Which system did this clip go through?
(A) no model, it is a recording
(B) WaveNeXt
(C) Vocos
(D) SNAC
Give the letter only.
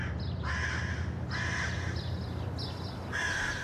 A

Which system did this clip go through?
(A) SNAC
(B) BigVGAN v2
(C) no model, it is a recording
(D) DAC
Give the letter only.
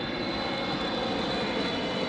C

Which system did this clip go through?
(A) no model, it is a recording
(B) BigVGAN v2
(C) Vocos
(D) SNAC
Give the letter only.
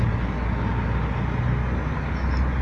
A